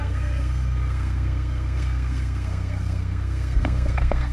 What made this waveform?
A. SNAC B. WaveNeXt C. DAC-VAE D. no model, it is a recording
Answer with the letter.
A